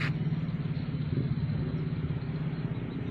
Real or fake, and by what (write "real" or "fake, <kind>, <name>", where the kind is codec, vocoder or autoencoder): real